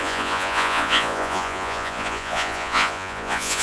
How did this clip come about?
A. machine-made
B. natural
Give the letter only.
A